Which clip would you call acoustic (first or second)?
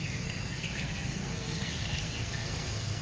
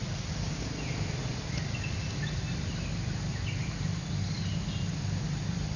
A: second